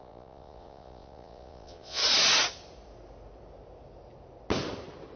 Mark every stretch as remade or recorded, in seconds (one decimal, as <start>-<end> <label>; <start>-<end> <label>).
0.0-2.0 remade; 2.0-5.2 recorded